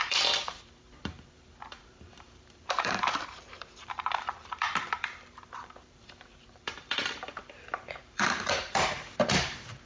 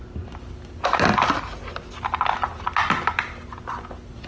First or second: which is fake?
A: first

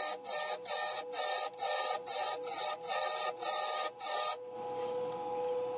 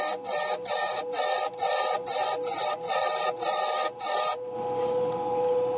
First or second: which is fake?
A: second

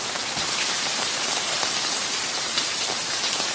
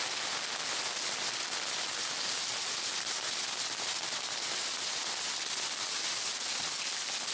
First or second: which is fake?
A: first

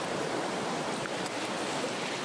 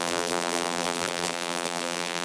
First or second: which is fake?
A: second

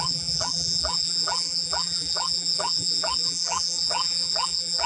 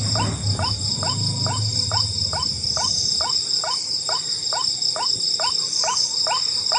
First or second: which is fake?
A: first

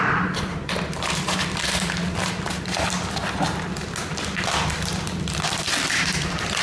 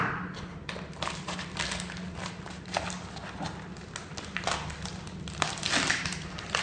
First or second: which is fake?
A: first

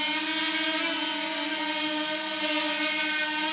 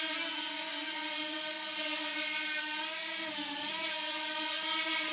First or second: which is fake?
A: second